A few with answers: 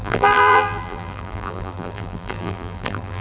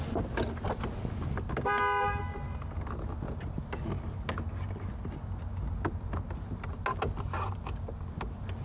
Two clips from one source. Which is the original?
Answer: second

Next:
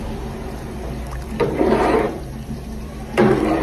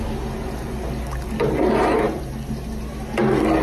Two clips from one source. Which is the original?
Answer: second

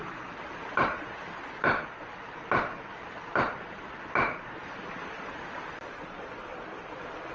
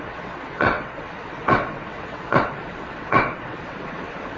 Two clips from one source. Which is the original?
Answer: first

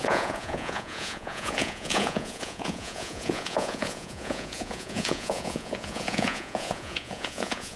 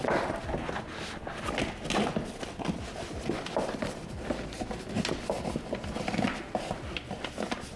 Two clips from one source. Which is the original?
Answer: second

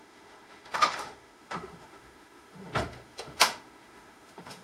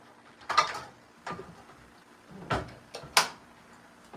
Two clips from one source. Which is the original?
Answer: second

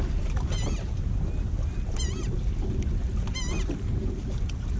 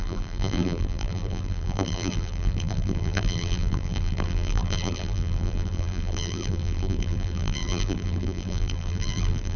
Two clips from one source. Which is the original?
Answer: first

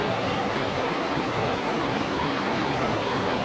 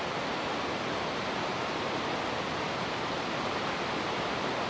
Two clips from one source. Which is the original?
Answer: second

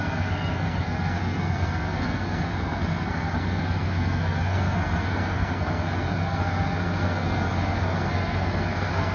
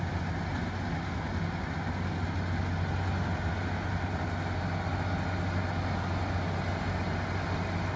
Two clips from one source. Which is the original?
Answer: second